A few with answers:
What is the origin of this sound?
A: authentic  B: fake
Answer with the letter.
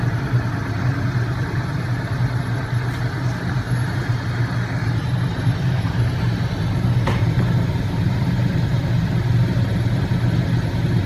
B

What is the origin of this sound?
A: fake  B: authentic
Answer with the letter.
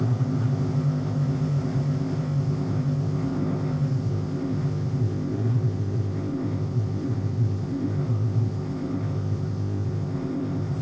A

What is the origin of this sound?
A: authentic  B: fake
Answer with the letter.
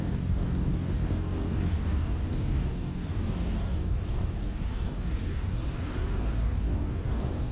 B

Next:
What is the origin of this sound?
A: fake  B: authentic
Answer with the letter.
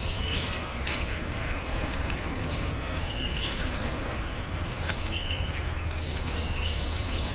A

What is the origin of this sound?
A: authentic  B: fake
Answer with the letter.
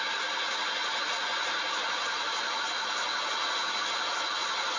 A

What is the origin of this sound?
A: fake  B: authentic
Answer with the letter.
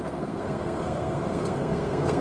A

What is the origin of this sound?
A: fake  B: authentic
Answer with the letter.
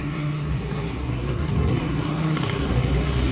A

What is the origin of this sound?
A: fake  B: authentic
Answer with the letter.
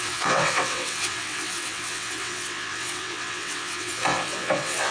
A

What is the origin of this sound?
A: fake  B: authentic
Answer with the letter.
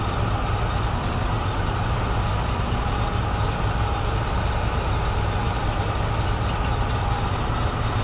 B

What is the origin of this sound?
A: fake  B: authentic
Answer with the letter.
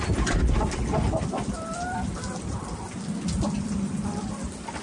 B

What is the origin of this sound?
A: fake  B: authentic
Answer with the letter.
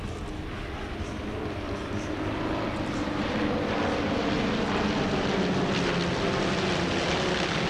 B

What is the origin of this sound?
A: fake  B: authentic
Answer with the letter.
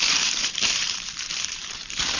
A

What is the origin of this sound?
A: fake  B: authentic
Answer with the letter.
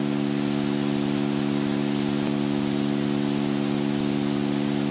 B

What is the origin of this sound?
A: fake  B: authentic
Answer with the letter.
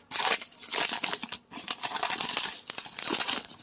B